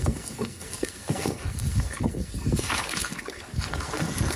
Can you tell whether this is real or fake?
fake